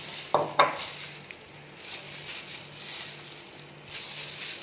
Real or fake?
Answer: real